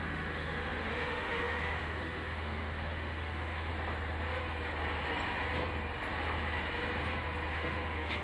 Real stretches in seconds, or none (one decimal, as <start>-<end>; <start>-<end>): 3.7-7.5